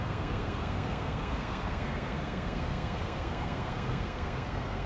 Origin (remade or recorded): remade